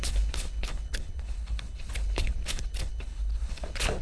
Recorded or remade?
remade